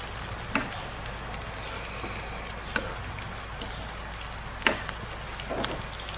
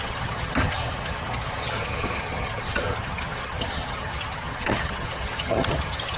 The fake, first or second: second